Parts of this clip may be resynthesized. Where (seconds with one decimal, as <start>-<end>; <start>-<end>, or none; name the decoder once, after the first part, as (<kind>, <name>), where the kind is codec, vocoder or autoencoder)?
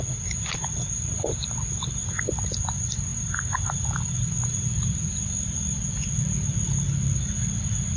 none